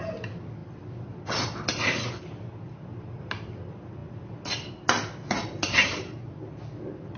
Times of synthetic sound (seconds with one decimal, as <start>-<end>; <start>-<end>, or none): none

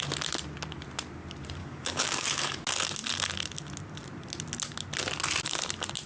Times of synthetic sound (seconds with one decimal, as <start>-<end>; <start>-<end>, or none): 1.6-2.6

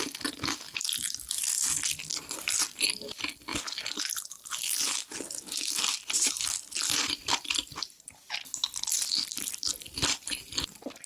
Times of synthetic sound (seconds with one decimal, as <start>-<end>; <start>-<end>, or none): none